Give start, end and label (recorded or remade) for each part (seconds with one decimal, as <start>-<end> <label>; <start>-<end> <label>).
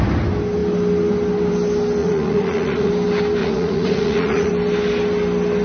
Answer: 0.0-2.0 recorded; 2.0-2.9 remade; 2.9-3.4 recorded; 3.4-4.5 remade; 4.5-5.6 recorded